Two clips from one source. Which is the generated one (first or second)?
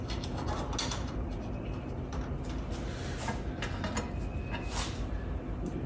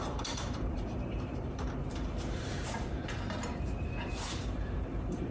second